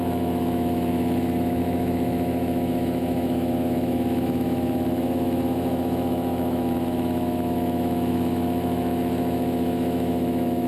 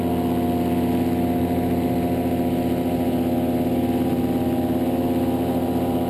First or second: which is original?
second